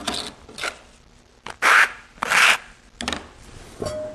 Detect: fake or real real